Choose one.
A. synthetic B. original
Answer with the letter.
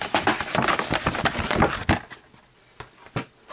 B